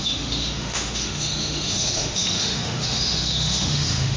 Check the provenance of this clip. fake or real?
fake